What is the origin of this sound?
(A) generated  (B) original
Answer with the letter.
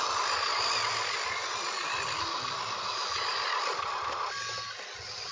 B